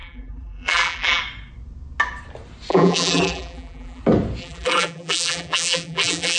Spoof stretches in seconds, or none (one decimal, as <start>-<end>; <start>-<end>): 0.0-1.2; 2.7-4.0; 4.4-6.4